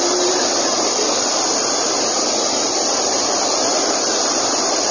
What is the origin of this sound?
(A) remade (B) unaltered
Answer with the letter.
A